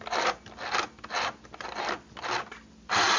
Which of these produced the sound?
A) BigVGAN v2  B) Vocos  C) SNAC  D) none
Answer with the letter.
D